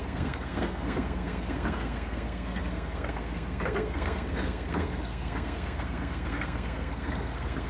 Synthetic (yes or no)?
yes